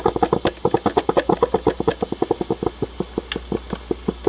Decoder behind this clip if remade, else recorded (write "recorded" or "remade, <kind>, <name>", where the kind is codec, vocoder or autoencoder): recorded